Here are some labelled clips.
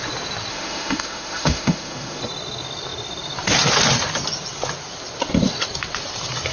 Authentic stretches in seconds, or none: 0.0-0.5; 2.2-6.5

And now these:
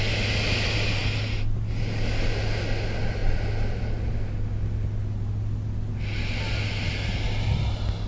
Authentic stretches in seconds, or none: 0.0-8.1